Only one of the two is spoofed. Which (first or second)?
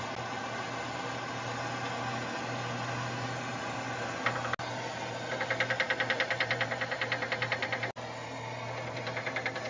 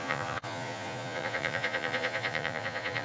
second